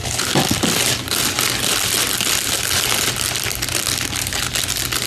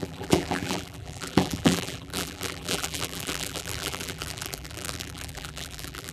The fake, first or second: second